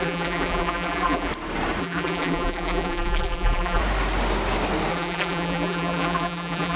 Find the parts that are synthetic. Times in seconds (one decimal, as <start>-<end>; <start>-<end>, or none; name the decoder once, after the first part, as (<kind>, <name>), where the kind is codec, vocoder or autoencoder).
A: 0.0-1.3 (vocoder, BigVGAN v2); 1.8-3.8; 4.9-6.8